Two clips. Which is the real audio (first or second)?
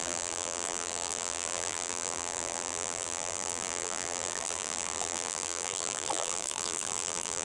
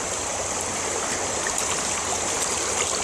second